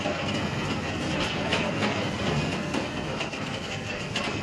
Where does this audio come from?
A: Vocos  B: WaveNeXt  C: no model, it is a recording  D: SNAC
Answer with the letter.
D